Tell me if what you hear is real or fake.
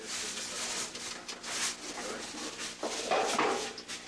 real